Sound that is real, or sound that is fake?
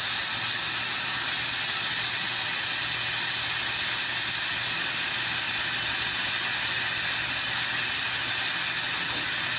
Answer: real